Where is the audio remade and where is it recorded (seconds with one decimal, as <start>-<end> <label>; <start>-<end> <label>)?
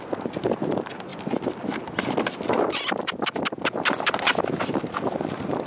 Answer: 0.0-5.7 recorded